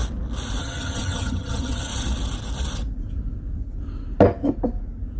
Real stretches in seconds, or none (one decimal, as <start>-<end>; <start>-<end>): 0.0-0.6; 1.9-5.2